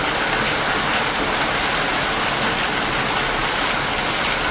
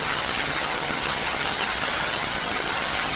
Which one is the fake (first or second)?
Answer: second